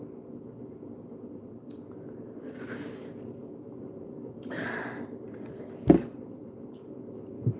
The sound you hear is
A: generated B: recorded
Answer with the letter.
A